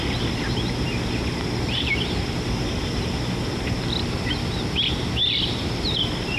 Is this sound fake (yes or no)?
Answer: no